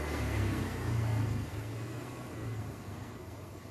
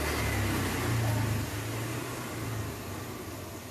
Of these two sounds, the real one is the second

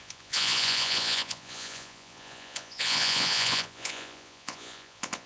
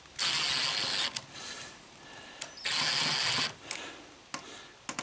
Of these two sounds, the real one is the second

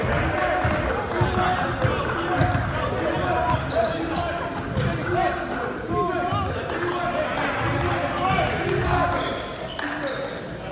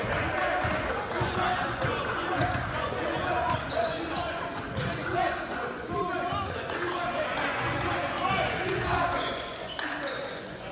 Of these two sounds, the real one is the first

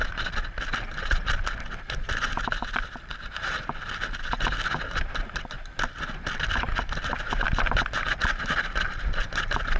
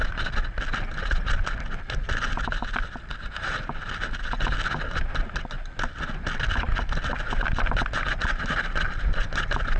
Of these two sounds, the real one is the second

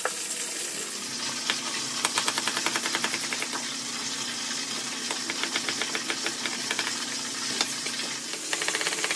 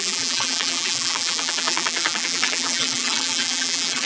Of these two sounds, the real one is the first